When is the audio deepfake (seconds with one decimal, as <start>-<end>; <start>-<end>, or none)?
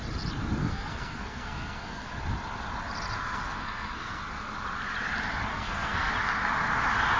0.6-2.1; 3.2-4.2; 5.5-6.1